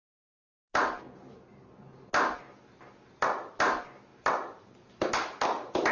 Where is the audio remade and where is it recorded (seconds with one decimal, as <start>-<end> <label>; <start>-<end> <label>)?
0.0-5.9 recorded